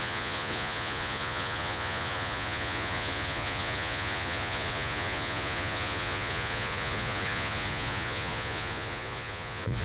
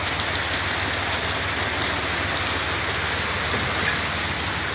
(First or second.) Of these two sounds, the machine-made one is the first